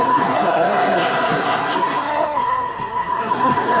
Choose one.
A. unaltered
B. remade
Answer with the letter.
B